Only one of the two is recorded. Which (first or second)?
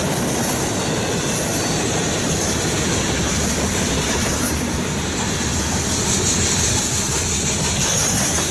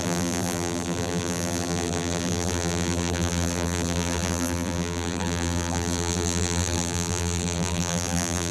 first